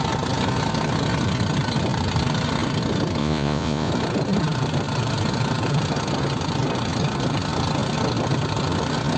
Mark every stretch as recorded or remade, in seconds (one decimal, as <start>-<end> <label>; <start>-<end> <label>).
0.0-3.2 recorded; 3.2-3.9 remade; 3.9-9.2 recorded